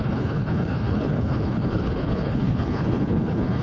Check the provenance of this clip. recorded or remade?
remade